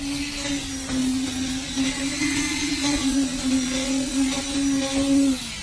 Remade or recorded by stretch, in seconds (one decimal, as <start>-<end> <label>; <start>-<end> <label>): 0.0-1.0 recorded; 1.0-4.4 remade; 4.4-5.6 recorded